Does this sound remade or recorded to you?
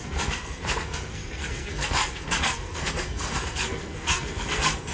remade